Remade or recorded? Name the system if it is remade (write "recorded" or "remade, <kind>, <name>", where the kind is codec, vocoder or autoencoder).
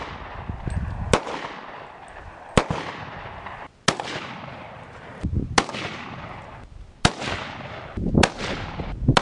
recorded